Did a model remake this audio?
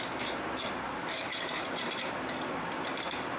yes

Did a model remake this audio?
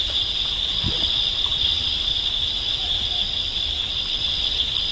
yes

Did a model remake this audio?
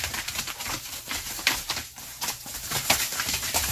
yes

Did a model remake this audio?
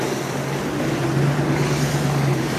no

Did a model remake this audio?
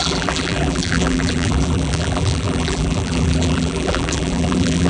yes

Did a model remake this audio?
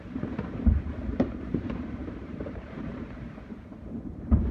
yes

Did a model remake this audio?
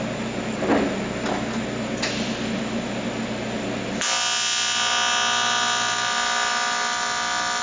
no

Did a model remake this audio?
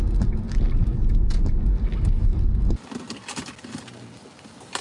no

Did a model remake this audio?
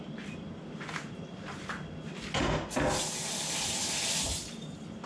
no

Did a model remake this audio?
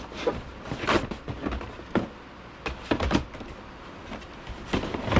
no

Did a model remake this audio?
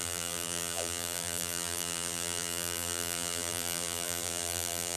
yes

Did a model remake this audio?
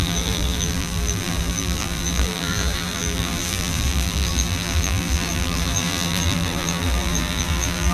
yes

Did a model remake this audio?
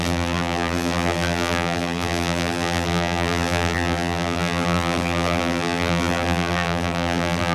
yes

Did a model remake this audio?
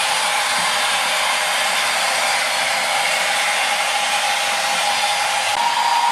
no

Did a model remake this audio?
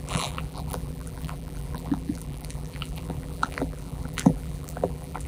yes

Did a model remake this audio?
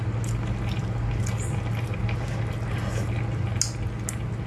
no